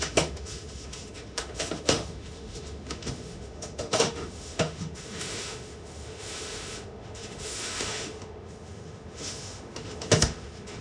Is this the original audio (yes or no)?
no